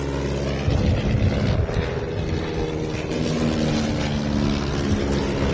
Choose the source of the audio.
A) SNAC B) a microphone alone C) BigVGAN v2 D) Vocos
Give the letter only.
B